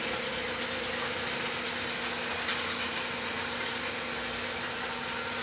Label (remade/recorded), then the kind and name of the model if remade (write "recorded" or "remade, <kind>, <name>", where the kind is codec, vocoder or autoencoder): recorded